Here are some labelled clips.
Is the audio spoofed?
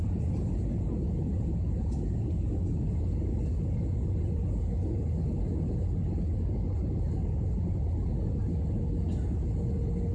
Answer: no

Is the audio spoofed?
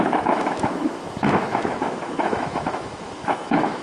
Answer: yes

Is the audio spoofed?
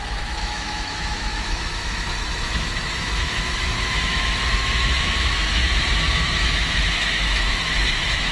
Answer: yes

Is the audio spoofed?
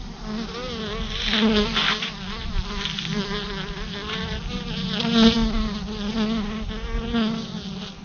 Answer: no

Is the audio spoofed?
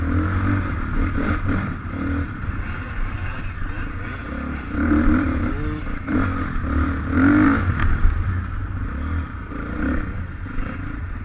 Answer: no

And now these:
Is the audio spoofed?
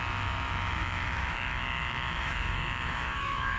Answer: yes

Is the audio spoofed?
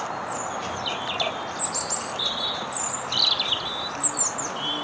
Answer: no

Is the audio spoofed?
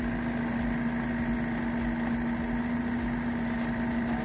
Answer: no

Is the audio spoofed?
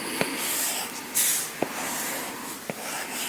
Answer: no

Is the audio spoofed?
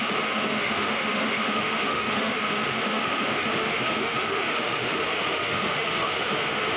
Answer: yes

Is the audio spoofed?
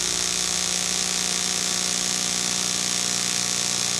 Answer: no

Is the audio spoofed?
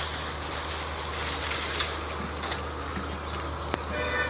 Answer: no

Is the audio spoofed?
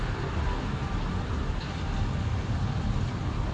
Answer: no